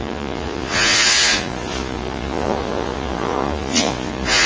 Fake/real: fake